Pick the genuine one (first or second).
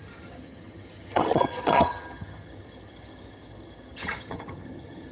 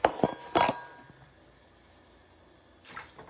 second